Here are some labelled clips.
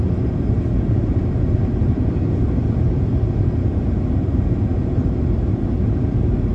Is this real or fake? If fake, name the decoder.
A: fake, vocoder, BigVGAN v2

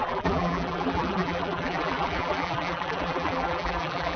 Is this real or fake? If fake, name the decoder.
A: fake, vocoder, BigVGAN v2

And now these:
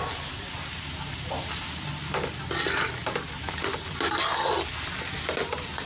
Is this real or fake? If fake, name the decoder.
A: real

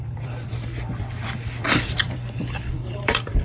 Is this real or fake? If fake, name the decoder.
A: fake, vocoder, BigVGAN v2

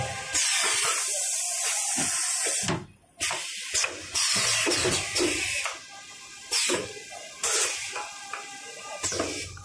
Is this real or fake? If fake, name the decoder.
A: real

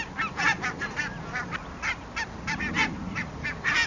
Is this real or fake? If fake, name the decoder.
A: real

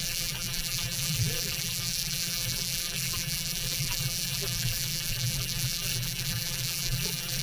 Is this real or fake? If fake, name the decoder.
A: fake, vocoder, BigVGAN v2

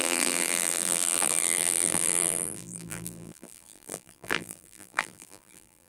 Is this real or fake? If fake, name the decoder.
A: fake, vocoder, BigVGAN v2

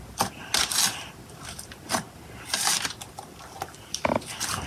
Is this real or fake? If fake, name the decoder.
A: real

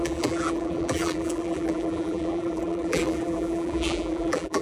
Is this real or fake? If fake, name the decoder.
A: fake, vocoder, BigVGAN v2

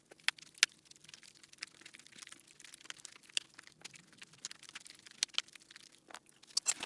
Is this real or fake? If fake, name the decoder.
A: real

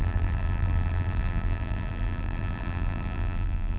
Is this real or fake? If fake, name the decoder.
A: fake, vocoder, BigVGAN v2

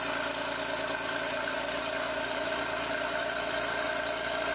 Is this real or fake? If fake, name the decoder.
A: real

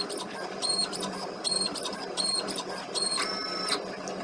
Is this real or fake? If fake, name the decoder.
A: fake, vocoder, BigVGAN v2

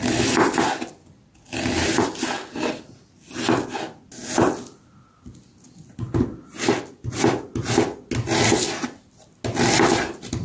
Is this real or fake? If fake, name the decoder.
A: real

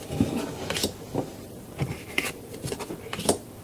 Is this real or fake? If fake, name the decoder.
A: real